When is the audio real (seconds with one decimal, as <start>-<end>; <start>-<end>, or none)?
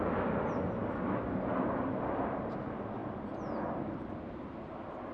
0.0-5.1